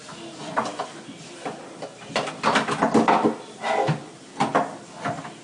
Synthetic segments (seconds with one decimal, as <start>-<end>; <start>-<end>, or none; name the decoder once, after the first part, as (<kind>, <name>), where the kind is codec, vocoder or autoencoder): none

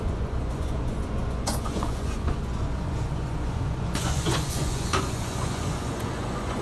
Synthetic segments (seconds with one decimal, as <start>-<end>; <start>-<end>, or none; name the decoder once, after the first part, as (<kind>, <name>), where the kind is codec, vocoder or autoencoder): 0.0-6.6 (vocoder, Vocos)

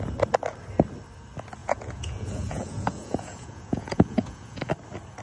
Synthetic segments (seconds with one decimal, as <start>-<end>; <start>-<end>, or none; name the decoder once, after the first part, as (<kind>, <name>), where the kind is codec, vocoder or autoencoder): 1.6-4.7 (vocoder, Vocos)

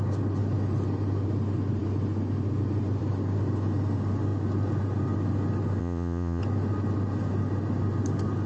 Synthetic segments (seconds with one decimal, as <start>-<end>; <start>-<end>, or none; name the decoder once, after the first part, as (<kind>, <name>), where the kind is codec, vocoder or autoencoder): 5.8-6.4 (vocoder, Vocos)